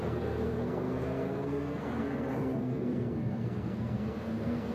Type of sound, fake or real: fake